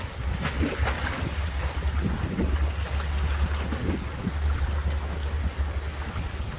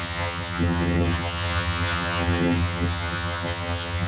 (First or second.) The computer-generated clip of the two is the second